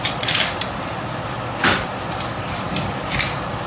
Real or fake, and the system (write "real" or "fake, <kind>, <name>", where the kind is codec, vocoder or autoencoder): real